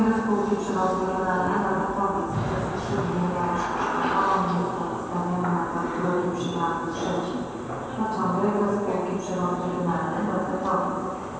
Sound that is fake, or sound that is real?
real